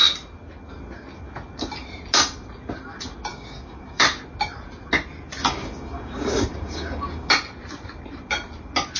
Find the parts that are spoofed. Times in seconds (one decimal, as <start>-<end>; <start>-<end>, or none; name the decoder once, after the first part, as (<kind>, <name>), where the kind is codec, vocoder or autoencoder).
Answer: 3.3-4.0 (codec, DAC); 5.4-7.3